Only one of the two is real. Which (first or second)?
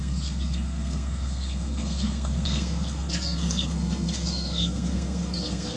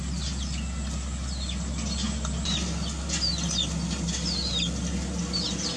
second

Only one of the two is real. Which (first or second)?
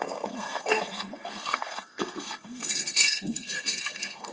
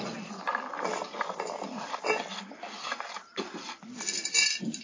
second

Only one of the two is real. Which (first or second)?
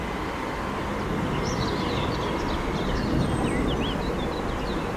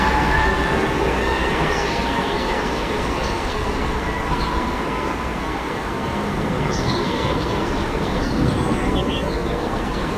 first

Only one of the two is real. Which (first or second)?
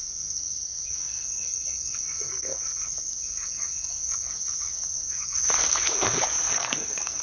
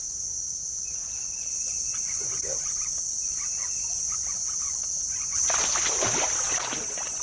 second